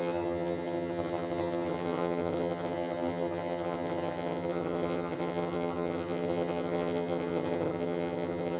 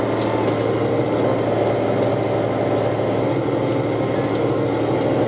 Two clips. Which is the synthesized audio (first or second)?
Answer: first